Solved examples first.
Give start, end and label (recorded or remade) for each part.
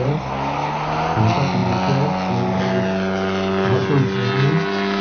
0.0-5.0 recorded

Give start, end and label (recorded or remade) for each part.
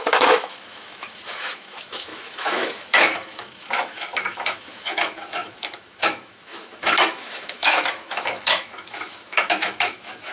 0.0-10.3 remade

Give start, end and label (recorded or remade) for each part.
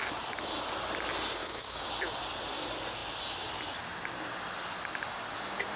0.0-1.4 recorded; 1.4-1.9 remade; 1.9-5.8 recorded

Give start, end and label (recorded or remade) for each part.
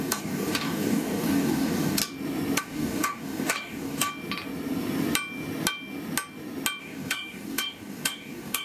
0.0-2.0 remade; 2.0-2.6 recorded; 2.6-4.1 remade; 4.1-6.8 recorded; 6.8-8.6 remade